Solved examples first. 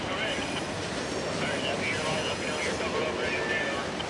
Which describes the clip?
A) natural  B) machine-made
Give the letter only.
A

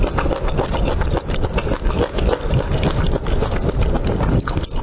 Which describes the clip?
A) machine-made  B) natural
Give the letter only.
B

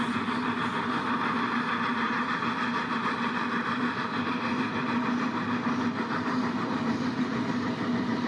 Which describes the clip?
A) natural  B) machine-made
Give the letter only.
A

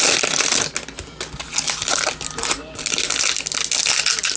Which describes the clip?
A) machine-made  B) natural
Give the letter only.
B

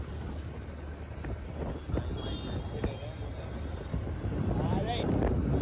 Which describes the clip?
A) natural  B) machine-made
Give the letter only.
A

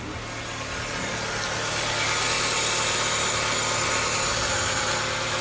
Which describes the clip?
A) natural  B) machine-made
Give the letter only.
A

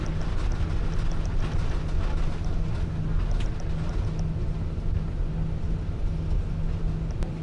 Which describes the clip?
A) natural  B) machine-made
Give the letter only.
A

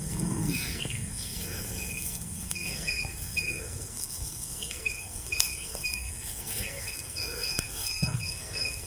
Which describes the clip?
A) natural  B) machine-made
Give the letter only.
B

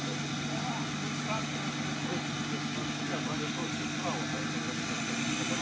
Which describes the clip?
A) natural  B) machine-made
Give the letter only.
A